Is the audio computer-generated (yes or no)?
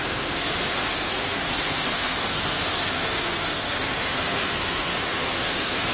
yes